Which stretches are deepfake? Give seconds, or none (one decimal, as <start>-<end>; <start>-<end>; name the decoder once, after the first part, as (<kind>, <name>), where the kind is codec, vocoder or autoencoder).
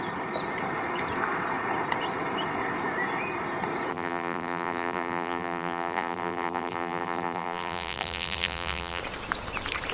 3.9-9.0 (vocoder, BigVGAN v2)